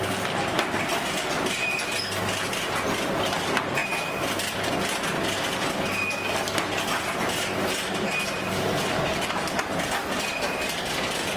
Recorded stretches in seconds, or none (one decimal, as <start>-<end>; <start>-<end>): 0.0-11.4